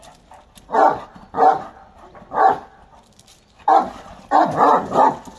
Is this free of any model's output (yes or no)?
no